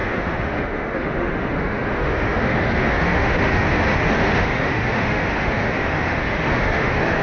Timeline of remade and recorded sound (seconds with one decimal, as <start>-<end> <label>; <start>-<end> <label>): 0.0-7.2 remade